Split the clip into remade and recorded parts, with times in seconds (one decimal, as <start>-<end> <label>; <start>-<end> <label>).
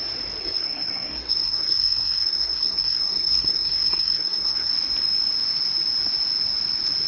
0.0-0.4 recorded; 0.4-4.7 remade; 4.7-7.1 recorded